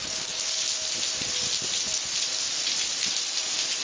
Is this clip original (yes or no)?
yes